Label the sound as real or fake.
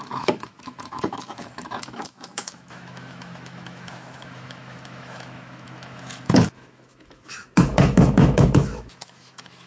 fake